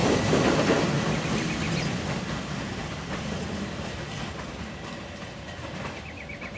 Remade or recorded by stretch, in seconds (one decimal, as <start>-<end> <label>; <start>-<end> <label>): 0.0-6.6 recorded